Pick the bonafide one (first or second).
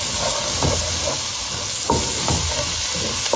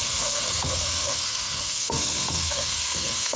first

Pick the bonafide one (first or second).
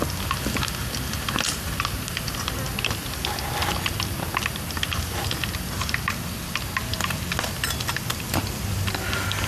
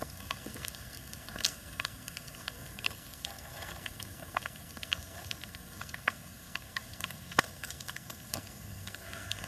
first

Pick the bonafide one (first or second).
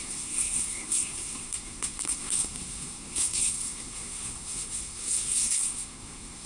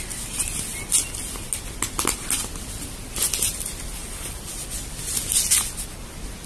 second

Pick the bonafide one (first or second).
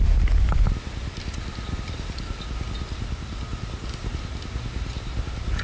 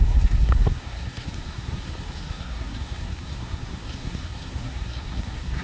first